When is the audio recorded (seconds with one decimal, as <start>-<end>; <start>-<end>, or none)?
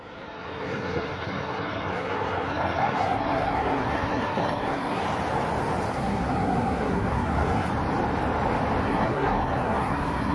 5.0-5.9; 7.7-8.8